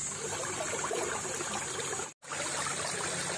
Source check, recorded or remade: recorded